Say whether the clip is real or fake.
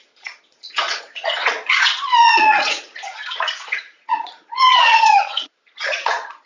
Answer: fake